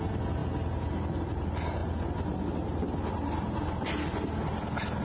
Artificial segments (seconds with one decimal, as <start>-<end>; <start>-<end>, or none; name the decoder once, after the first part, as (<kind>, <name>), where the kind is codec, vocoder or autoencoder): none

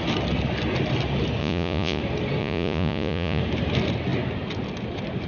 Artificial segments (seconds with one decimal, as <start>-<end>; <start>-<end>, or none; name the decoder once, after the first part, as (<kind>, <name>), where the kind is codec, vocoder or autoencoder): 1.4-2.0 (vocoder, Vocos); 2.4-3.4

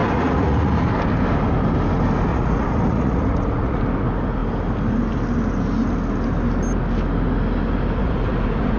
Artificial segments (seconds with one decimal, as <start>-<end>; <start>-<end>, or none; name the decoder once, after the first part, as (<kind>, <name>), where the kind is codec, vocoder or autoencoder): 0.0-0.9 (vocoder, Vocos); 2.3-3.8; 8.0-8.8

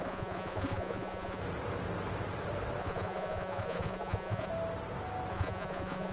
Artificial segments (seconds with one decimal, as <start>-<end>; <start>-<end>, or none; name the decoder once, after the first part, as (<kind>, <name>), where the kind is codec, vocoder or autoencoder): 0.0-1.4 (vocoder, Vocos); 2.8-4.5; 5.3-6.1

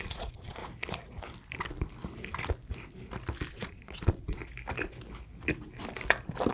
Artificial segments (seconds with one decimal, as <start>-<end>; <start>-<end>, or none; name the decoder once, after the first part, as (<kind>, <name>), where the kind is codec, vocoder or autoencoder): 0.0-0.6 (vocoder, Vocos); 3.5-4.4

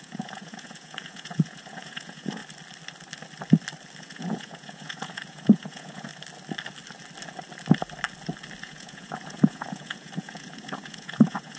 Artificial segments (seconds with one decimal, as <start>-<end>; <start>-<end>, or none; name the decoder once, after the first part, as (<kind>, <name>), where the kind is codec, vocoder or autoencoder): 0.0-2.4 (vocoder, Vocos); 4.0-6.1; 8.6-11.6